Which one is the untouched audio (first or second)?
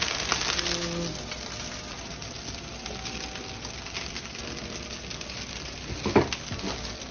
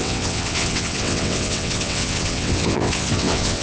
first